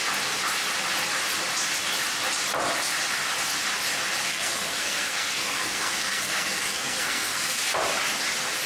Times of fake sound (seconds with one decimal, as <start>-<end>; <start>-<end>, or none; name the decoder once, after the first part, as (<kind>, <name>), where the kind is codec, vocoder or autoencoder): 4.3-7.6 (codec, SNAC)